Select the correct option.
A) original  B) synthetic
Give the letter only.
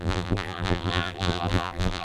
B